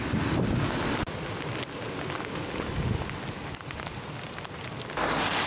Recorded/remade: recorded